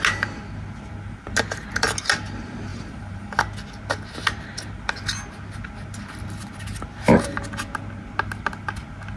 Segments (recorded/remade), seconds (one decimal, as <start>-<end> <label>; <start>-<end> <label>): 0.0-2.7 recorded; 2.7-3.4 remade; 3.4-9.2 recorded